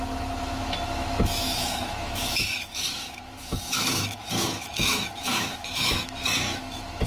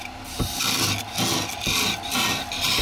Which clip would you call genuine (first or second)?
second